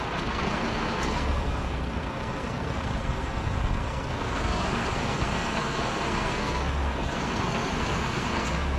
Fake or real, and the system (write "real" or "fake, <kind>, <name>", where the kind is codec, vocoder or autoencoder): fake, codec, SNAC